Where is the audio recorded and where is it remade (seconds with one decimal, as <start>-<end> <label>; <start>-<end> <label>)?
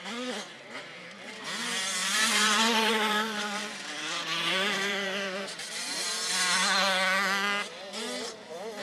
0.0-2.0 recorded; 2.0-6.3 remade; 6.3-8.8 recorded